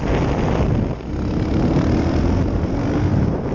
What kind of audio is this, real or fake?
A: real